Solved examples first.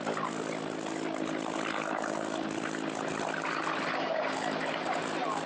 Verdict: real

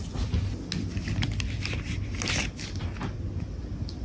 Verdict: real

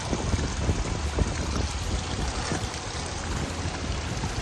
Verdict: real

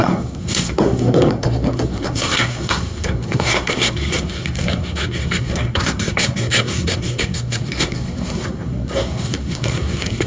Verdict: fake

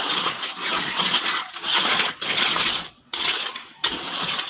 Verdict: fake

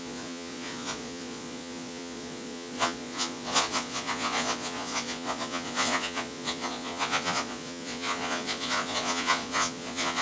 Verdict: fake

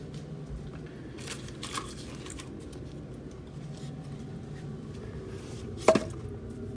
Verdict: real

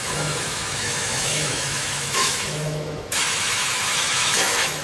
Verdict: fake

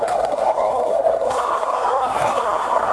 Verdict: fake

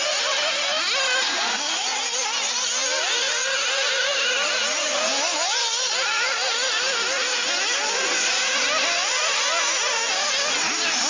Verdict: real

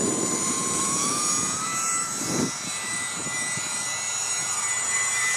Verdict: fake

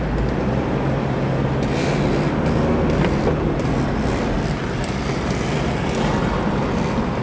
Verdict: real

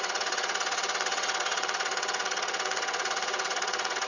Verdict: fake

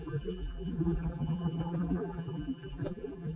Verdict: fake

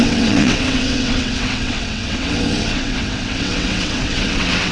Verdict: fake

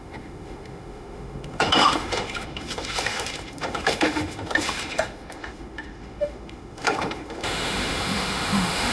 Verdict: fake